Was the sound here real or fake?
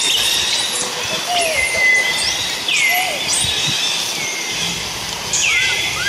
real